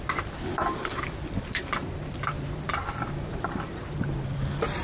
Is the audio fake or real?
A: fake